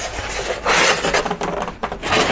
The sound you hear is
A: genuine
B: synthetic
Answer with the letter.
A